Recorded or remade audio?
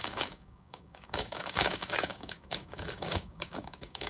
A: remade